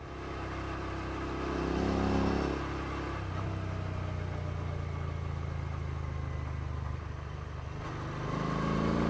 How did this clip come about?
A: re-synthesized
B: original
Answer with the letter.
B